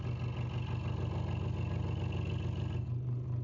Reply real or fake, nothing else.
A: real